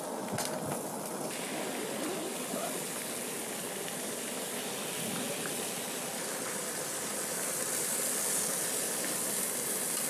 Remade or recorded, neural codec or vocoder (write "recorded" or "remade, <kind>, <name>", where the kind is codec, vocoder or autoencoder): recorded